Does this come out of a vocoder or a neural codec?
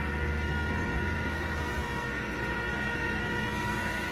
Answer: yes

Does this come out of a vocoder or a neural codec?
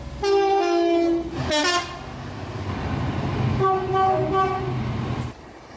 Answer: no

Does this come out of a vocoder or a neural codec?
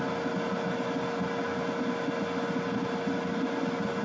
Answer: no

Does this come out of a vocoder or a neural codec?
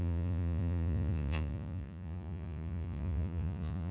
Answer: yes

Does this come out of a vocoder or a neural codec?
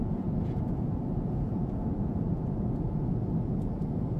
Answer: yes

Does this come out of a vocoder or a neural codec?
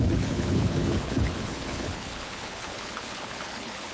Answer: yes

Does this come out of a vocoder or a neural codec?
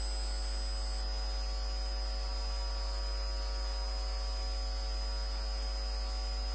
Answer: no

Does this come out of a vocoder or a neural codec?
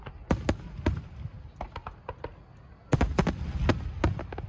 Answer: no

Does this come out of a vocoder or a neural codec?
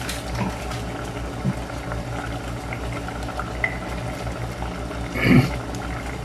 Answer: no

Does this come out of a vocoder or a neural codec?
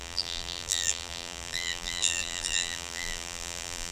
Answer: yes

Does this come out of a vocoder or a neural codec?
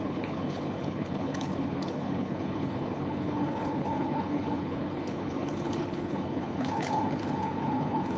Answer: yes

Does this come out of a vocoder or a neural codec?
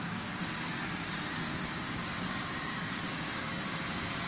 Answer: yes